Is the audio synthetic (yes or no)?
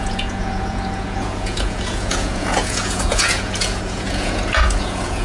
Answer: yes